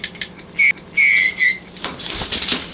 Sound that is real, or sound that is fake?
real